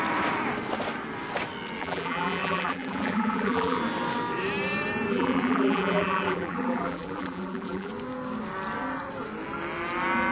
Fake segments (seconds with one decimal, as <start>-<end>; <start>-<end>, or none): 1.8-3.8; 5.1-7.9